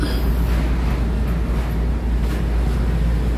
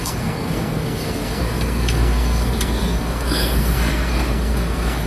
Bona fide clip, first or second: first